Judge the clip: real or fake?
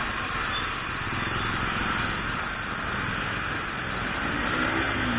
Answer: real